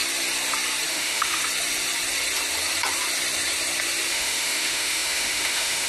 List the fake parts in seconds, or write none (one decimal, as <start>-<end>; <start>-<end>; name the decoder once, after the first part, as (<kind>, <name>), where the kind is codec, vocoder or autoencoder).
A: 0.9-1.4 (autoencoder, DAC-VAE); 4.1-5.9